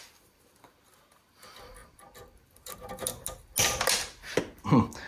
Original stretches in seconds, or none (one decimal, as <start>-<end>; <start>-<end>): 0.0-5.1